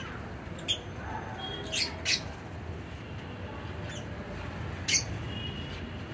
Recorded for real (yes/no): yes